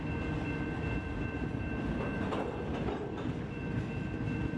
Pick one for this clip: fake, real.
real